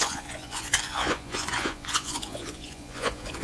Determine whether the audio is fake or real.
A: fake